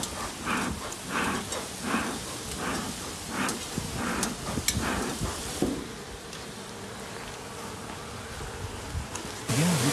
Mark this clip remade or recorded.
recorded